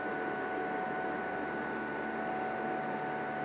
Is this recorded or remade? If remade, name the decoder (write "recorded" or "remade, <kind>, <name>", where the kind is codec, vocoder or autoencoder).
recorded